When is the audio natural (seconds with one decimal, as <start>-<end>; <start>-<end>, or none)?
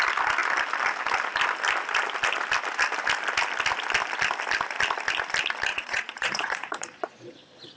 0.0-5.7